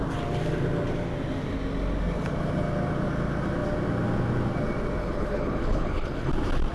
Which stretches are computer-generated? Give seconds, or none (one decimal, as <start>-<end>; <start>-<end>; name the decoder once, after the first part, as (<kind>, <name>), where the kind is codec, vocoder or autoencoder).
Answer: 5.0-6.3 (codec, HILCodec)